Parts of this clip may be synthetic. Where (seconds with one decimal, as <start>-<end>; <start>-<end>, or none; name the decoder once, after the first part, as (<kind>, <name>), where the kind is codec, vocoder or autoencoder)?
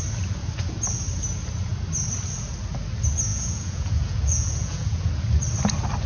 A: 3.3-5.1 (vocoder, Vocos)